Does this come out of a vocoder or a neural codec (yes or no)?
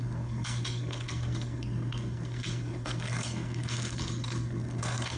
yes